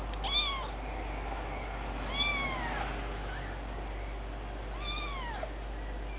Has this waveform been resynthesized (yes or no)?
no